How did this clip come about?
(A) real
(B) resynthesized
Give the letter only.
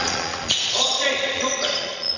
B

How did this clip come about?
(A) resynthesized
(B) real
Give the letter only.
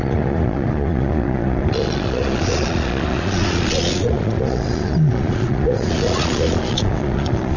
A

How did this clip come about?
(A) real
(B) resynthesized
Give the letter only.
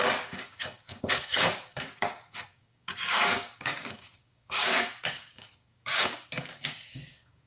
B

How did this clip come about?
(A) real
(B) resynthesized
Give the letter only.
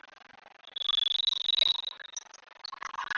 A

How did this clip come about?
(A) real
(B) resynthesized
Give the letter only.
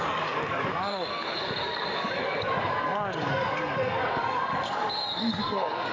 B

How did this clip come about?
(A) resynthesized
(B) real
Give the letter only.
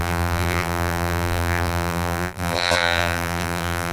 A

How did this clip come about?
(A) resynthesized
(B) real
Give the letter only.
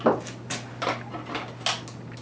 B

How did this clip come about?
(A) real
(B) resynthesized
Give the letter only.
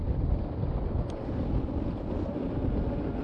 A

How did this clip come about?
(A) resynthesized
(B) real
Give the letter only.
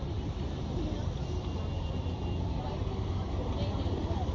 B